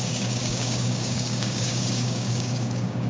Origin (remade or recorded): remade